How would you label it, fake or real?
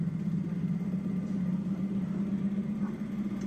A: real